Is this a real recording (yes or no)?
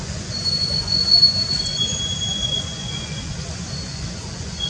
no